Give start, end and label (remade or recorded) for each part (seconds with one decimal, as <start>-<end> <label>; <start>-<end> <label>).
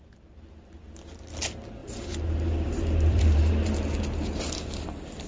0.0-1.8 recorded; 1.8-4.0 remade; 4.0-5.3 recorded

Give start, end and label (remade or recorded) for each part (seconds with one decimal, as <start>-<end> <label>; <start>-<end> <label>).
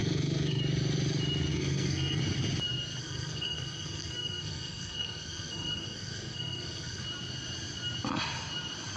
0.0-0.6 remade; 0.6-1.5 recorded; 1.5-2.2 remade; 2.2-3.0 recorded; 3.0-7.0 remade; 7.0-9.0 recorded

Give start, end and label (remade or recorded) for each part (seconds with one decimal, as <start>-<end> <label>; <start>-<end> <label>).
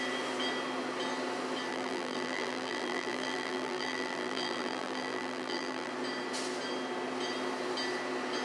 0.0-1.7 recorded; 1.7-5.9 remade; 5.9-8.4 recorded